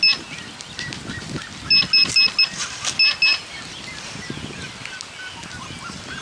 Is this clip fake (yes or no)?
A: no